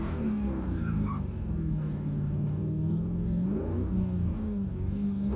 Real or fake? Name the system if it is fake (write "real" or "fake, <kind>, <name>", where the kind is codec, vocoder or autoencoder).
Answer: fake, codec, DAC